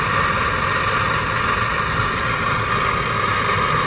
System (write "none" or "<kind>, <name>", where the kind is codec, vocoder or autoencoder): none